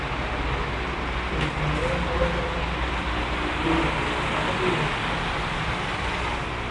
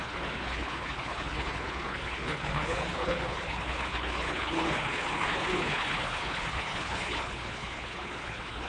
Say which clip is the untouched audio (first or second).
first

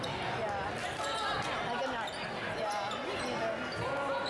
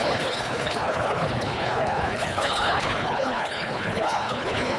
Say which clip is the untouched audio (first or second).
first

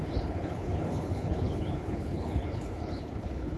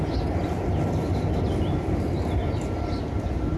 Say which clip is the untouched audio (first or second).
second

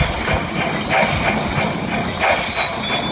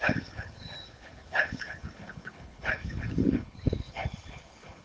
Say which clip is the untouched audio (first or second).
first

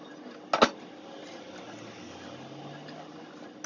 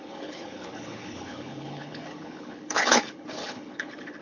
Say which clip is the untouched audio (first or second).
first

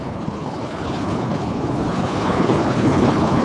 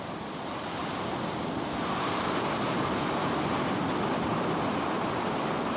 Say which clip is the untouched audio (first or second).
second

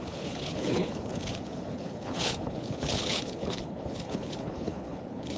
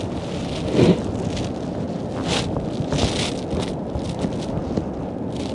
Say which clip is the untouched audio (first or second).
second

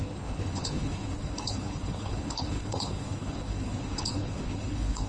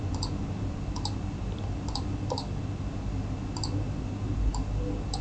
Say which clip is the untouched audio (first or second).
second